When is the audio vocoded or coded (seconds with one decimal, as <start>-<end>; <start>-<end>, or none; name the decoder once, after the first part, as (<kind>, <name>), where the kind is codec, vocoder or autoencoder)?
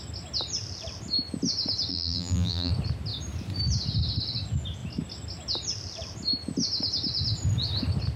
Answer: 1.9-2.7 (vocoder, BigVGAN v2)